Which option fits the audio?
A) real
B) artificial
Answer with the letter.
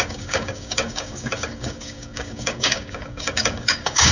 B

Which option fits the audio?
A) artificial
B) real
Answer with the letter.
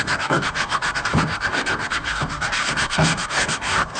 A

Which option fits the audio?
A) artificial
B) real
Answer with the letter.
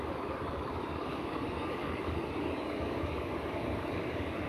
A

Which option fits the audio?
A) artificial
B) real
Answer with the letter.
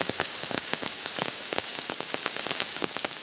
A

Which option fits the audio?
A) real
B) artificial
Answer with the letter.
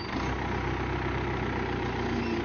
A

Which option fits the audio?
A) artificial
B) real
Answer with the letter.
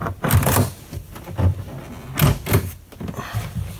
B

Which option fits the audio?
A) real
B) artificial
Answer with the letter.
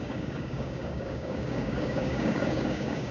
B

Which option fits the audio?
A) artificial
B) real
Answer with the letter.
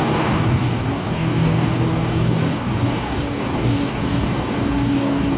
A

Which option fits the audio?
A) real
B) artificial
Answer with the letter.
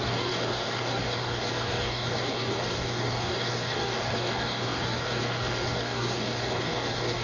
B